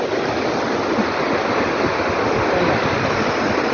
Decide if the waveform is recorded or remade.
recorded